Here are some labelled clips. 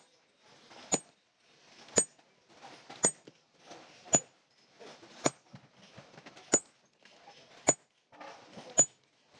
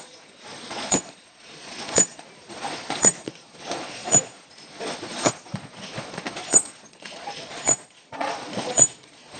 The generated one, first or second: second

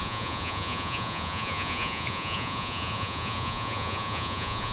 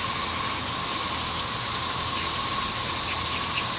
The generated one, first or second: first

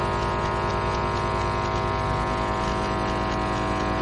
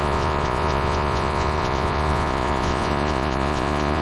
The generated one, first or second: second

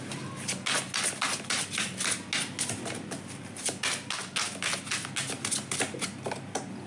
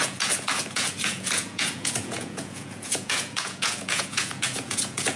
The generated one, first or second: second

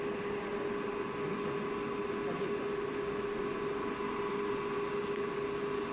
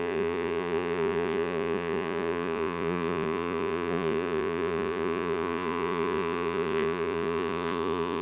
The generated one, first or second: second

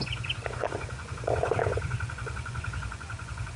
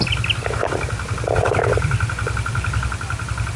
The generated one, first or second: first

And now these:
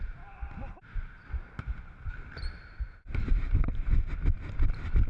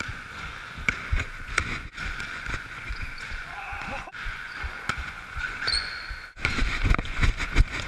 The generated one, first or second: second